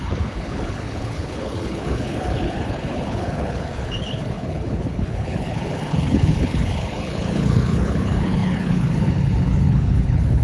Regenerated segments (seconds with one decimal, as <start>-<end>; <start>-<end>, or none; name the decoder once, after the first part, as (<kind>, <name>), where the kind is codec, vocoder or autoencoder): 0.0-10.4 (codec, HILCodec)